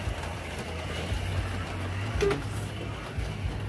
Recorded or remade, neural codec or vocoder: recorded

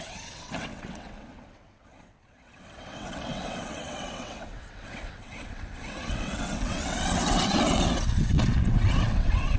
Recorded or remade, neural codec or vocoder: remade, vocoder, WaveNeXt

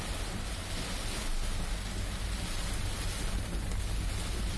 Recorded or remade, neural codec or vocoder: recorded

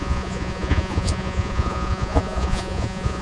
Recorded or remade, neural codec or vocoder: remade, vocoder, Vocos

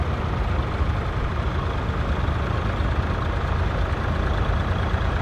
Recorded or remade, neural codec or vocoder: recorded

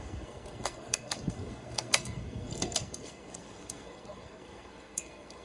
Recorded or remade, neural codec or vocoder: remade, codec, SNAC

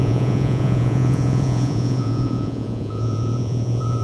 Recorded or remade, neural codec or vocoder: remade, vocoder, Vocos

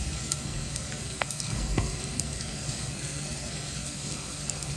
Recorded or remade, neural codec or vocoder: remade, codec, SNAC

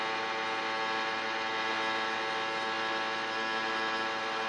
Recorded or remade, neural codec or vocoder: recorded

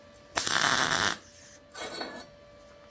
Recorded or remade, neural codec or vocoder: recorded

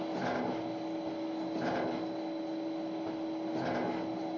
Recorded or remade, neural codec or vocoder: recorded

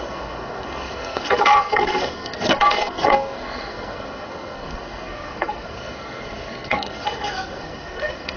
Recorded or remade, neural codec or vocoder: remade, codec, SNAC